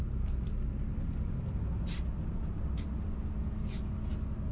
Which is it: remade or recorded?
recorded